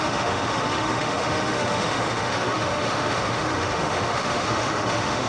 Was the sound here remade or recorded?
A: remade